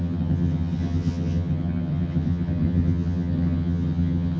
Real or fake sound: fake